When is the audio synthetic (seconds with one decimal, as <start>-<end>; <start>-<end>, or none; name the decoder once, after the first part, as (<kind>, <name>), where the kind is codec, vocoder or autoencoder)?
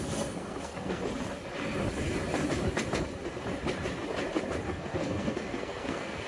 0.0-1.0 (codec, SNAC); 4.7-6.3